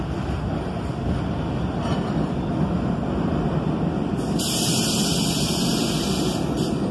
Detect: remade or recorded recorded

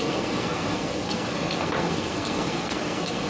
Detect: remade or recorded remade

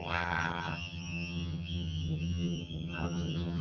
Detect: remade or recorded remade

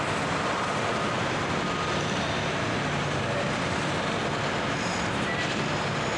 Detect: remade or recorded recorded